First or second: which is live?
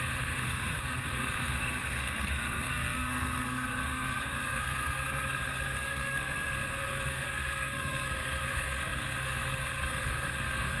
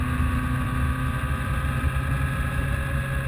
second